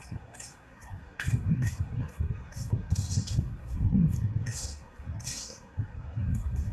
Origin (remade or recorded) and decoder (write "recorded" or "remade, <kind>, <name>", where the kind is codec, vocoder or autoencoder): remade, codec, SNAC